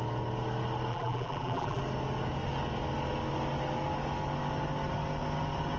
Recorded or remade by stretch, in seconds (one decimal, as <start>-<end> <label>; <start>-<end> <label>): 0.0-0.9 recorded; 0.9-1.8 remade; 1.8-5.8 recorded